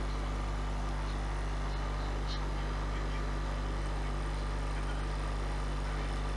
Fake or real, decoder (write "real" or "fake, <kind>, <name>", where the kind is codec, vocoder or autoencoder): real